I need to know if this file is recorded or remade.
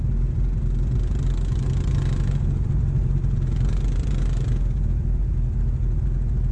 recorded